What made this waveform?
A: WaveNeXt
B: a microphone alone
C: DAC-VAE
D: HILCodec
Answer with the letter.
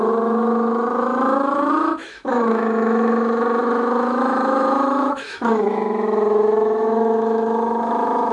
C